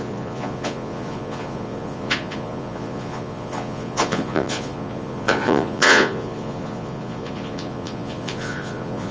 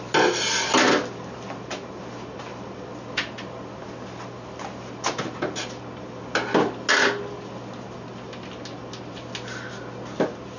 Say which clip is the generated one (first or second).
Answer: first